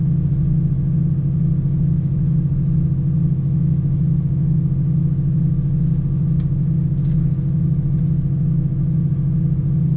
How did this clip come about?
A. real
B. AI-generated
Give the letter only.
A